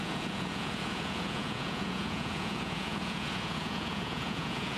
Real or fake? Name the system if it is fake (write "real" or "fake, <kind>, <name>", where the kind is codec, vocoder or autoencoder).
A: fake, vocoder, Vocos